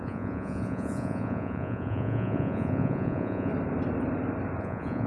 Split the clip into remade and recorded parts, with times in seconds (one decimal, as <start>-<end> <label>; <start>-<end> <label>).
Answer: 0.0-3.5 remade; 3.5-4.6 recorded; 4.6-5.1 remade